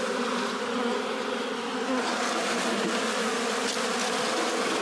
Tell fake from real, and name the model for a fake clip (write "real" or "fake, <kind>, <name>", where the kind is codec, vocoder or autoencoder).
real